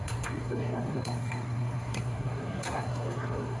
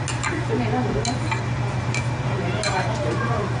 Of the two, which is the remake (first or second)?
first